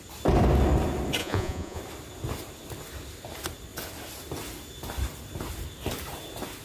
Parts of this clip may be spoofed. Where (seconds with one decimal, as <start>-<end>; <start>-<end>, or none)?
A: 1.2-1.8